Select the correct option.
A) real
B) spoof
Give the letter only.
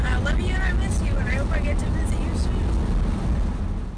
A